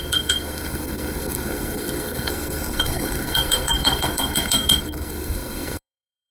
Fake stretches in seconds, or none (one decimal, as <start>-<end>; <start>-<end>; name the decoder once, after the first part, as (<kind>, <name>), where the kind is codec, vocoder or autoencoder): 0.0-6.3 (codec, SNAC)